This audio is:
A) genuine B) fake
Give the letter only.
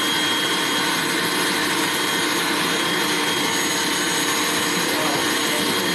A